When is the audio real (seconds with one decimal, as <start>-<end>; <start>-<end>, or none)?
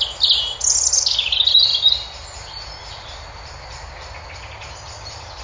0.0-5.4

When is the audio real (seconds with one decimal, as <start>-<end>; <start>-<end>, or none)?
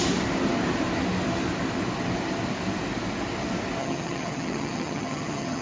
0.0-3.8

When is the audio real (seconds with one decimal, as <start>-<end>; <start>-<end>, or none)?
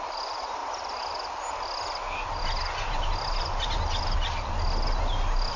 0.0-5.6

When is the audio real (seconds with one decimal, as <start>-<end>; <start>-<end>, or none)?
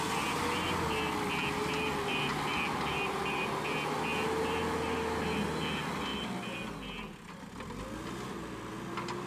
0.0-9.3